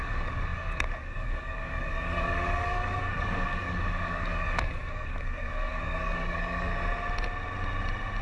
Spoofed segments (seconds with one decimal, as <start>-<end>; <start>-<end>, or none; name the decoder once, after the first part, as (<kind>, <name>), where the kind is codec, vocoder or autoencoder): 0.0-6.7 (codec, DAC)